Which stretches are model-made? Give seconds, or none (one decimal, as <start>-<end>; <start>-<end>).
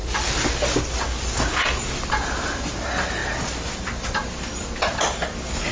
none